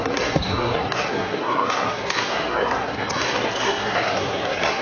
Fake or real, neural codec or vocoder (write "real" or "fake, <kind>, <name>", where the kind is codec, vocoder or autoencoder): fake, codec, SNAC